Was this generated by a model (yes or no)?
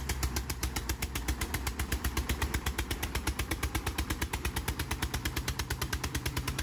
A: yes